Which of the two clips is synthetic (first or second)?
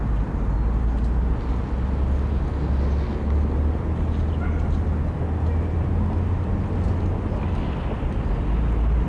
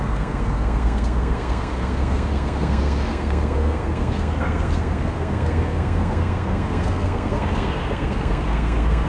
second